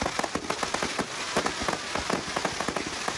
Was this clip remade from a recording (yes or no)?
yes